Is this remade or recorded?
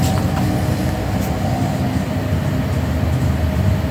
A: recorded